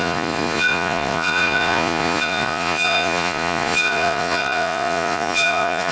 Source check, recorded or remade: remade